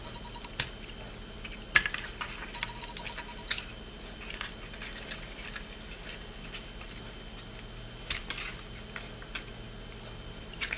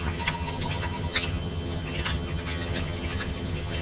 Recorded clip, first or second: first